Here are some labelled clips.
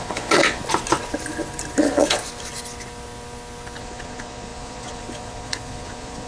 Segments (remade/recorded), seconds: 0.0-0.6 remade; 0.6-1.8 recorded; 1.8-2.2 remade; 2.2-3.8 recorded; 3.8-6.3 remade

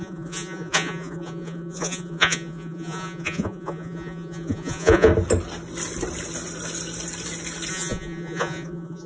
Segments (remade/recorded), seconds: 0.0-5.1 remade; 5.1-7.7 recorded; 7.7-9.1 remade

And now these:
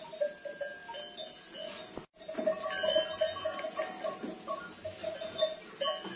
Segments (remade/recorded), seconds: 0.0-6.2 recorded

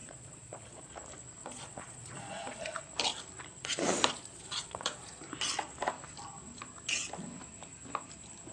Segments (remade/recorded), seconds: 0.0-0.9 remade; 0.9-1.4 recorded; 1.4-2.8 remade; 2.8-3.6 recorded; 3.6-5.2 remade; 5.2-8.5 recorded

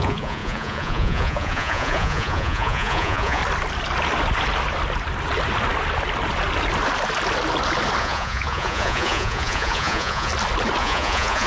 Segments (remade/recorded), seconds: 0.0-3.4 remade; 3.4-8.0 recorded; 8.0-10.3 remade; 10.3-10.8 recorded; 10.8-11.5 remade

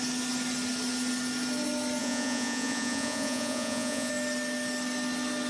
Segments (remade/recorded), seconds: 0.0-2.0 recorded; 2.0-4.1 remade; 4.1-5.5 recorded